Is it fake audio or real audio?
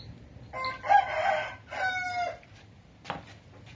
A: real